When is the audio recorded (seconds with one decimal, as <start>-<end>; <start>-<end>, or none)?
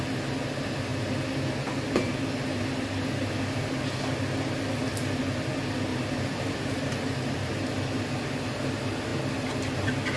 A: 0.0-5.9; 7.5-10.2